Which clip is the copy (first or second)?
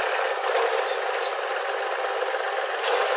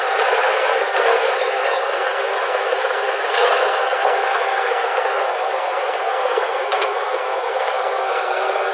second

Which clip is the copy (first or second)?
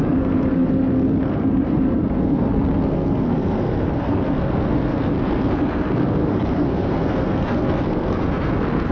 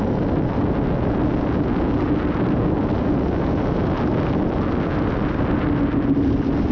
first